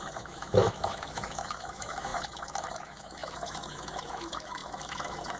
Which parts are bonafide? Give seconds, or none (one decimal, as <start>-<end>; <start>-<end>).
none